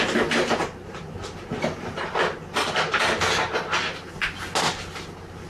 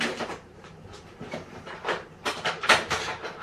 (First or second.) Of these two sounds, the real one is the first